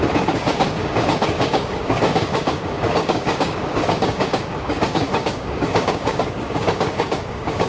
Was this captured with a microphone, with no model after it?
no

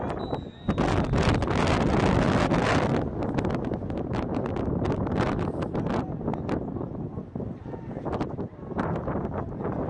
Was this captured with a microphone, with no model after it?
yes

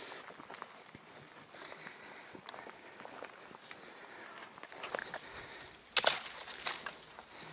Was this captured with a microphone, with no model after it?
yes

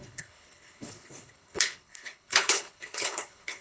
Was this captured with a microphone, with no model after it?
no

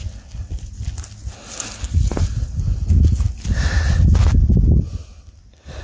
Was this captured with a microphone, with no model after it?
yes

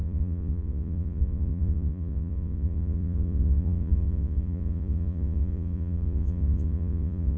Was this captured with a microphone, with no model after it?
no